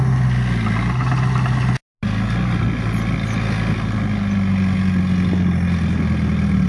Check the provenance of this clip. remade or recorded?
recorded